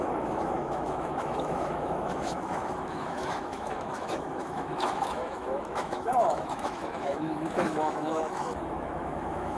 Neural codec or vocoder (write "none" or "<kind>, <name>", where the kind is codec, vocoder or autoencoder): autoencoder, DAC-VAE